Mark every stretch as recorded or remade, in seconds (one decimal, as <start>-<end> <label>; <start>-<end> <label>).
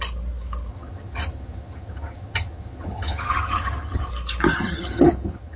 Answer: 0.0-0.7 recorded; 0.7-4.1 remade; 4.1-4.5 recorded; 4.5-5.6 remade